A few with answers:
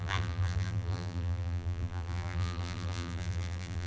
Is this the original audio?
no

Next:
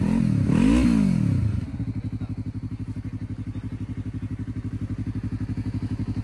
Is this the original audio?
yes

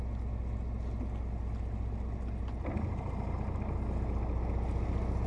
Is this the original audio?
yes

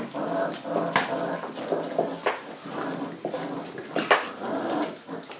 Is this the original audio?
yes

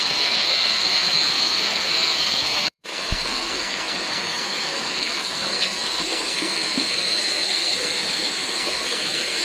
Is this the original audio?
no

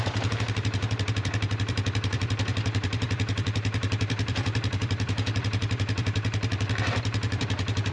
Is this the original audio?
no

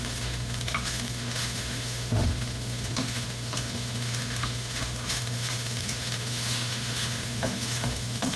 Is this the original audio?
no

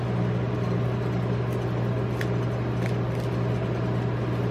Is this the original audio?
yes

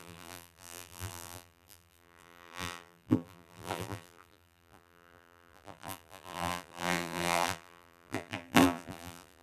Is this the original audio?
no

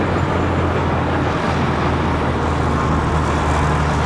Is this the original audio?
yes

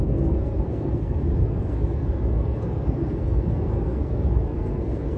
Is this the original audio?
no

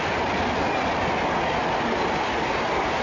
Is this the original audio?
yes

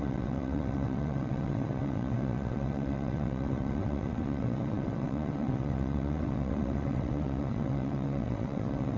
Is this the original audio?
no